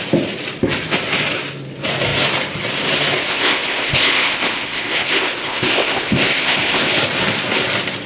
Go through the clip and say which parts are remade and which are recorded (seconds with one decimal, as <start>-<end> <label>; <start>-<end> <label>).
0.0-3.3 recorded; 3.3-6.9 remade; 6.9-8.1 recorded